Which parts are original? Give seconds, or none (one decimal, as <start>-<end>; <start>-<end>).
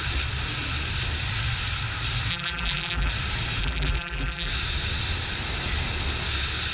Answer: 0.0-2.3; 3.1-3.6; 4.5-6.7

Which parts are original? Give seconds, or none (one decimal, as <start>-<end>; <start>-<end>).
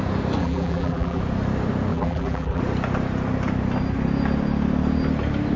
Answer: 0.0-0.4; 1.2-1.9; 2.6-5.6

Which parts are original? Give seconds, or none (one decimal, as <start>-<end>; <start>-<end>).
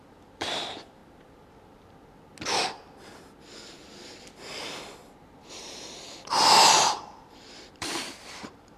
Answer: 1.0-5.5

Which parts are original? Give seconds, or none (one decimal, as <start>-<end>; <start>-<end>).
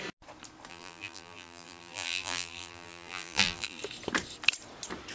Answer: 0.0-0.7; 3.8-5.1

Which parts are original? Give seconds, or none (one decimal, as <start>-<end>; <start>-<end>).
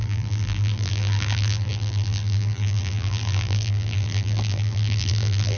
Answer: none